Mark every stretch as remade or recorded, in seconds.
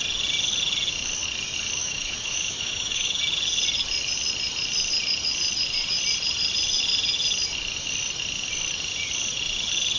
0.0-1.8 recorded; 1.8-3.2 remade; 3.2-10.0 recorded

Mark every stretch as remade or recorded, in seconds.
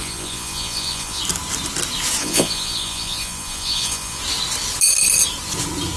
0.0-1.2 remade; 1.2-2.2 recorded; 2.2-4.2 remade; 4.2-6.0 recorded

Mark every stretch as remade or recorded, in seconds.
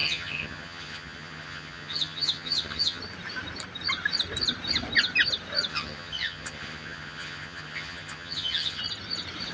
0.0-3.0 remade; 3.0-5.7 recorded; 5.7-8.8 remade; 8.8-9.5 recorded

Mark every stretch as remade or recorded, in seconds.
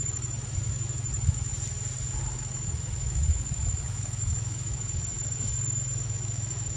0.0-1.5 remade; 1.5-2.2 recorded; 2.2-6.8 remade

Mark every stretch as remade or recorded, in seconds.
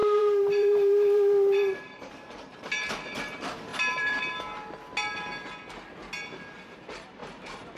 0.0-2.9 remade; 2.9-3.7 recorded; 3.7-4.2 remade; 4.2-7.2 recorded; 7.2-7.8 remade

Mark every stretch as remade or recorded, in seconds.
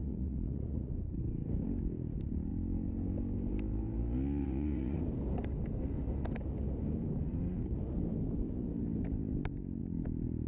0.0-0.9 remade; 0.9-4.4 recorded; 4.4-5.0 remade; 5.0-10.5 recorded